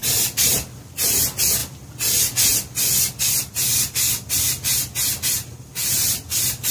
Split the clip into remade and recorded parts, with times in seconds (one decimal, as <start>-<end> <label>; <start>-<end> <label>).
0.0-6.7 recorded